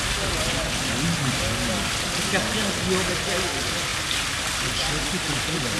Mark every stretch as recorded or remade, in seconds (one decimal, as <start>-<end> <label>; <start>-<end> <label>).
0.0-5.8 recorded